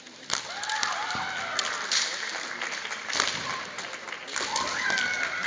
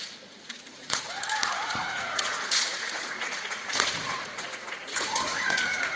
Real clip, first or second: first